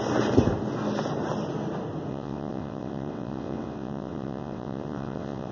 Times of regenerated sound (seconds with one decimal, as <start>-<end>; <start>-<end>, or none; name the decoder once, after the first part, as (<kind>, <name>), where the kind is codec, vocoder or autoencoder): 2.1-5.5 (vocoder, WaveNeXt)